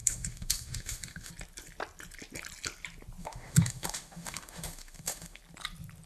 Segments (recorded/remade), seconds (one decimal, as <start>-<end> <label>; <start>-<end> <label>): 0.0-1.3 remade; 1.3-3.2 recorded; 3.2-5.4 remade; 5.4-6.1 recorded